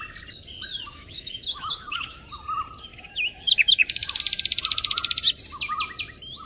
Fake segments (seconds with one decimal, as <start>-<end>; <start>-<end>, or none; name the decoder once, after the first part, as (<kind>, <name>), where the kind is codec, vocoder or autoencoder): 0.7-2.2 (autoencoder, DAC-VAE); 2.9-4.2